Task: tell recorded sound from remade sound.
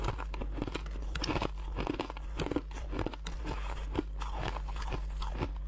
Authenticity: recorded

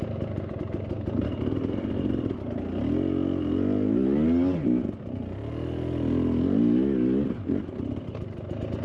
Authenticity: recorded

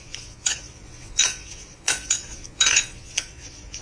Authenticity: remade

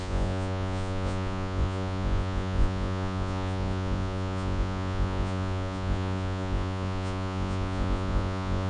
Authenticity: remade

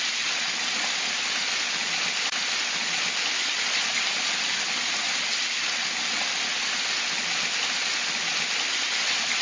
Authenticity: recorded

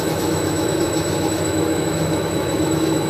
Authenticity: remade